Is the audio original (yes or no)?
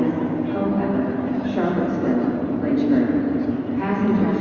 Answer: yes